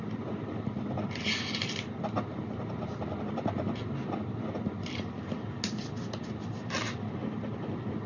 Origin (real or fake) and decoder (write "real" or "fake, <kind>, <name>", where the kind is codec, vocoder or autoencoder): real